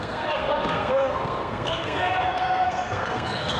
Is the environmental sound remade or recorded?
remade